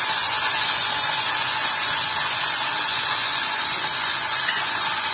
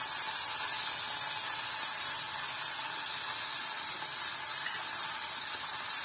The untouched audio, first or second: second